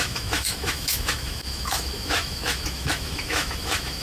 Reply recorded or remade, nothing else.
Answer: remade